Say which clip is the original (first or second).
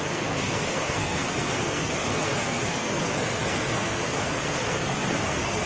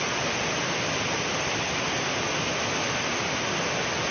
second